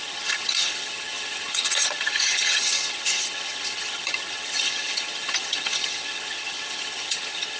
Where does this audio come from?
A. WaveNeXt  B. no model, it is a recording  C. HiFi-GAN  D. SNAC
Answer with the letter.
C